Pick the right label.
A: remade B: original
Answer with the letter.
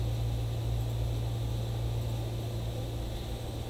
B